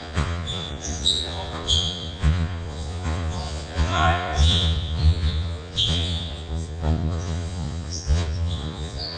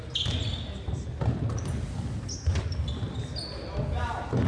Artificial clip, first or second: first